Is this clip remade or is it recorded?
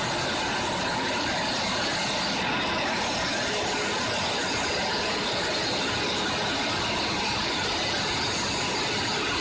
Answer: recorded